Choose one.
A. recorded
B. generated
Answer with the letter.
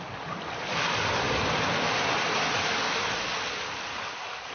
A